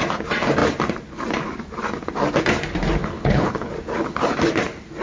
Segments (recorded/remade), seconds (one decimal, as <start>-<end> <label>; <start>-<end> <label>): 0.0-3.0 recorded; 3.0-3.7 remade; 3.7-5.0 recorded